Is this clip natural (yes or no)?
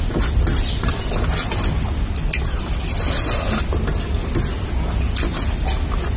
yes